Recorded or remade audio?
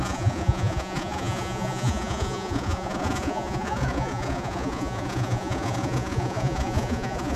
remade